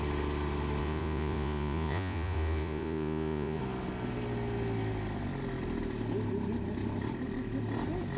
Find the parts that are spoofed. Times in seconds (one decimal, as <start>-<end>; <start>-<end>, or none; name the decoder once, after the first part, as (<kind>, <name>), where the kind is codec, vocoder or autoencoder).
0.8-3.6 (vocoder, Vocos)